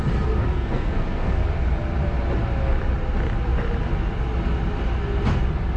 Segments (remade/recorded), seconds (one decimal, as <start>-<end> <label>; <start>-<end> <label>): 0.0-0.5 recorded; 0.5-1.4 remade; 1.4-5.8 recorded